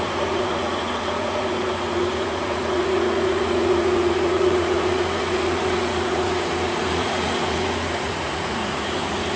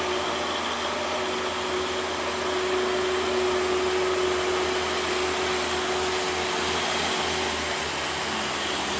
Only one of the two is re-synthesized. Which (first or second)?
first